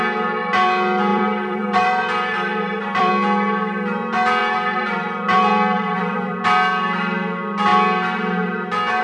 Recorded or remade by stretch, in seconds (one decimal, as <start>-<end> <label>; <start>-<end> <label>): 0.0-1.1 recorded; 1.1-3.1 remade; 3.1-4.4 recorded; 4.4-6.4 remade; 6.4-9.0 recorded